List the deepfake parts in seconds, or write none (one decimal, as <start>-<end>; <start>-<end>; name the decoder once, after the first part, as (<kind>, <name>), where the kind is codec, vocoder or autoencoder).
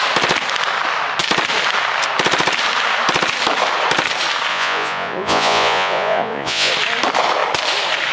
4.5-6.7 (vocoder, Vocos)